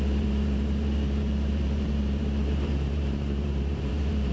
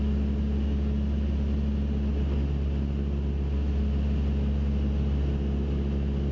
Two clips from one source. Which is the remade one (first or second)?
first